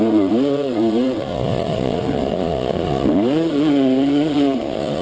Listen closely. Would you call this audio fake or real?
fake